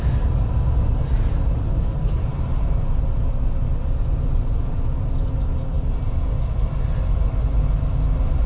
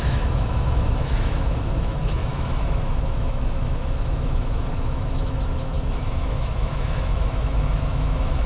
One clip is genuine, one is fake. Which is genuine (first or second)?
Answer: first